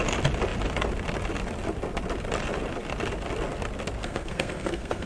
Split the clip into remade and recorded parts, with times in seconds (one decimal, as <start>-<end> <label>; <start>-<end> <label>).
0.0-4.0 recorded; 4.0-5.1 remade